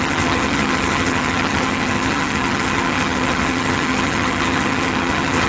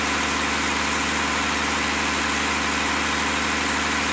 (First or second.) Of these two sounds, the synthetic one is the first